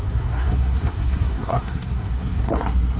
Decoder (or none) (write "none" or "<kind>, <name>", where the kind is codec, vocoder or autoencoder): codec, SNAC